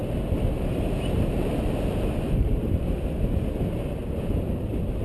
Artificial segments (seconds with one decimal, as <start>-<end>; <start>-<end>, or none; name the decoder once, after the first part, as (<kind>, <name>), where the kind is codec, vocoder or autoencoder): 0.0-3.0 (vocoder, BigVGAN v2); 4.0-5.0